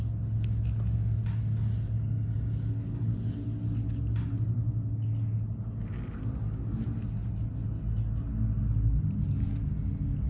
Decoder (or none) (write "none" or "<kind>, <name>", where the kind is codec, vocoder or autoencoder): none